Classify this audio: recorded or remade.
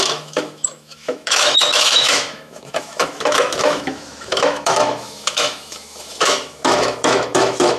remade